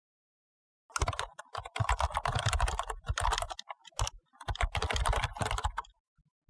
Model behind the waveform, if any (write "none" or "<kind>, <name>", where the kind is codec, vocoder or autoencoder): none